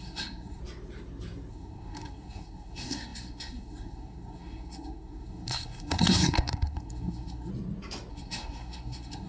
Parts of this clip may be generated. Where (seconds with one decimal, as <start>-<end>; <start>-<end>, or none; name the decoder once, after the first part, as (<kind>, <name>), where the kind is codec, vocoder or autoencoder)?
0.0-0.6 (codec, SNAC); 1.5-7.5; 8.1-9.3